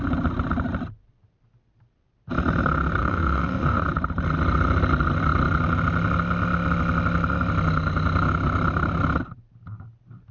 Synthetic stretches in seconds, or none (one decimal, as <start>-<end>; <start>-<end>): 3.0-3.8